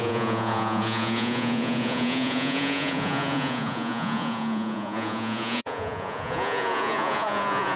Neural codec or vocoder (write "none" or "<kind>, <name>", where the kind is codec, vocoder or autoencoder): vocoder, Vocos